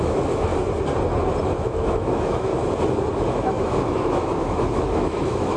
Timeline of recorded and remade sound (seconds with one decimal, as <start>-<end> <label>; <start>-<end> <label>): 0.0-0.5 remade; 0.5-1.6 recorded; 1.6-2.5 remade; 2.5-3.2 recorded; 3.2-5.6 remade